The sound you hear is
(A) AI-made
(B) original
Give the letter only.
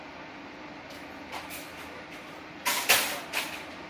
B